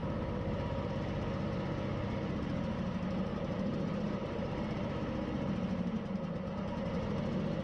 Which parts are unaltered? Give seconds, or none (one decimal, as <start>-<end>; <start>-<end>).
0.9-3.3; 6.2-7.6

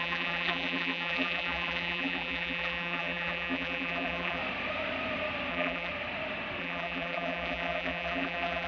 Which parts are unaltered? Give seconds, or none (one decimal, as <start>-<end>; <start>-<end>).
4.4-5.5; 5.9-6.6

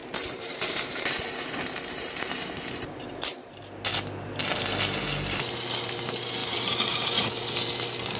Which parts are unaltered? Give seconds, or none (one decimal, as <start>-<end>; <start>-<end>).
3.6-6.4; 7.3-8.2

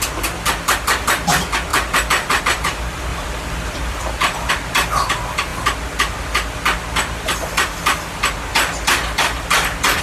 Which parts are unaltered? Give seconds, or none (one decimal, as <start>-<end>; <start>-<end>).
0.0-3.1; 4.5-10.0

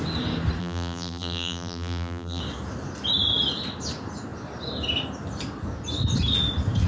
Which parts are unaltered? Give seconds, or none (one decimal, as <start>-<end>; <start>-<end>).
0.0-0.6; 2.4-6.9